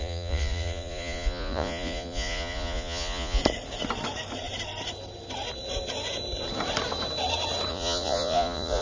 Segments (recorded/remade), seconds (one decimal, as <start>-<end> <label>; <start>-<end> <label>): 0.0-3.4 remade; 3.4-7.7 recorded; 7.7-8.8 remade

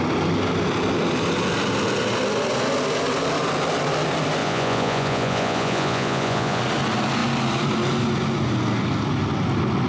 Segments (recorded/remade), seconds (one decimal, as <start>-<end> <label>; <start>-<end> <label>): 0.0-4.4 recorded; 4.4-6.6 remade; 6.6-9.9 recorded

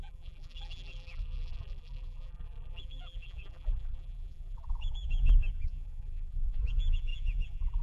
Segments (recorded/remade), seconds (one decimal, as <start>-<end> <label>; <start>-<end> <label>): 0.0-7.8 remade